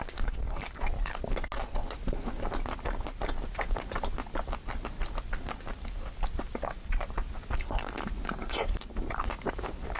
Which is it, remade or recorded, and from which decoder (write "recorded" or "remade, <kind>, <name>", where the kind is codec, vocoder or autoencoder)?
recorded